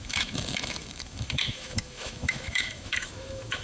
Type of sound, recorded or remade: remade